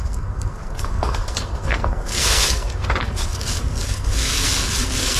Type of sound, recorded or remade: remade